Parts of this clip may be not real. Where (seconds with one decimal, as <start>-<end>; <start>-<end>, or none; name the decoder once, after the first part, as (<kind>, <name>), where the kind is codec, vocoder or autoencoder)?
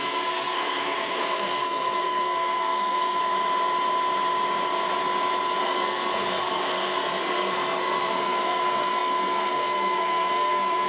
0.0-3.2 (codec, SNAC); 5.6-10.9